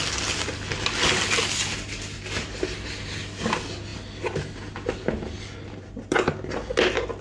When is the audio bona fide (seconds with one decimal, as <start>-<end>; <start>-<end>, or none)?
0.0-7.2

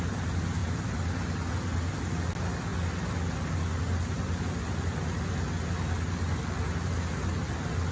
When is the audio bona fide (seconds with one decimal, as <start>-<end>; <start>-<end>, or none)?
0.0-7.9